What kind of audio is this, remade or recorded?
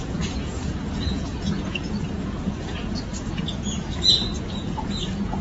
remade